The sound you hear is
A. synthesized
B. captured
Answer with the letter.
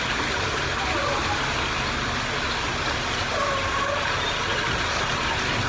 B